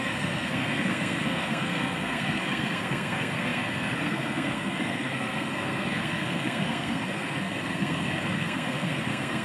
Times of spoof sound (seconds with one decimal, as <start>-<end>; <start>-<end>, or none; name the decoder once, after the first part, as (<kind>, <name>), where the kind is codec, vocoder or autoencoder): 0.0-9.4 (codec, SNAC)